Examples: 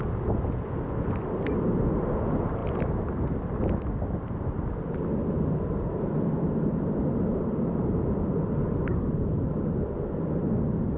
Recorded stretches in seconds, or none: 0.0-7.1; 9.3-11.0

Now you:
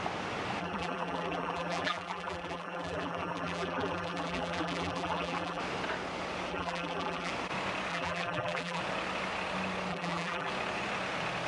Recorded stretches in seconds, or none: 0.0-0.6; 5.6-6.5; 7.3-7.9; 8.8-9.9; 10.5-11.5

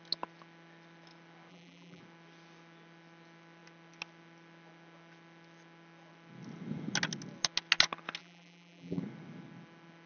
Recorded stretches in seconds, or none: 0.0-1.5; 2.0-8.2; 9.0-10.1